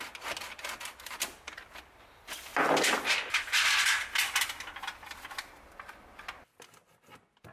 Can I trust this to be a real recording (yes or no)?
yes